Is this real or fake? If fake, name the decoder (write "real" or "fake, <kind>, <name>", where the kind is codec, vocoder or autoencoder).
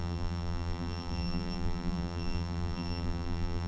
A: fake, vocoder, BigVGAN v2